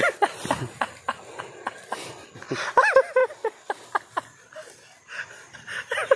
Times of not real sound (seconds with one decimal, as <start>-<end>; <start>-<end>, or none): none